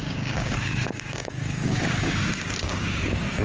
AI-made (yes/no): yes